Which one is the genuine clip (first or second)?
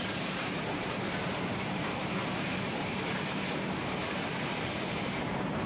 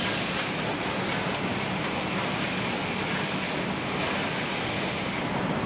second